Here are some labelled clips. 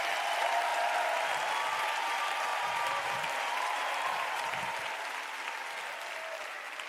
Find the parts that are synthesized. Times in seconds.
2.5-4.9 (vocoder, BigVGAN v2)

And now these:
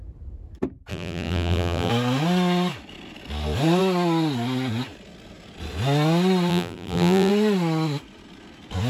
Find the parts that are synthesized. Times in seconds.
0.9-1.9 (vocoder, BigVGAN v2); 6.5-7.3

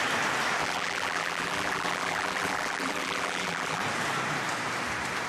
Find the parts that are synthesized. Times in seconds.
0.6-3.8 (vocoder, BigVGAN v2)

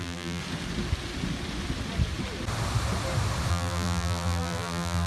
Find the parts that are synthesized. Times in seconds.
0.0-0.4 (vocoder, BigVGAN v2); 3.5-5.1

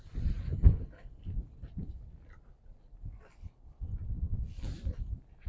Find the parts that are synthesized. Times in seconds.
0.0-3.3 (vocoder, BigVGAN v2); 4.0-5.5

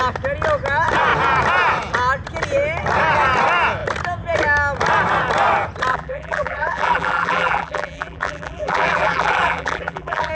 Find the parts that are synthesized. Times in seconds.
5.9-10.3 (vocoder, BigVGAN v2)

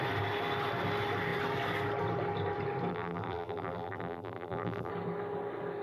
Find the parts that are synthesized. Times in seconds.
2.9-4.9 (vocoder, BigVGAN v2)

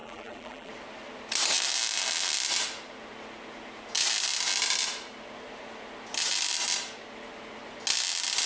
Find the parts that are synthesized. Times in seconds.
0.0-0.7 (vocoder, BigVGAN v2)